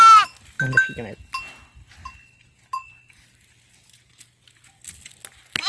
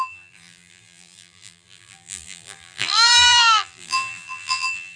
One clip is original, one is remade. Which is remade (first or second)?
second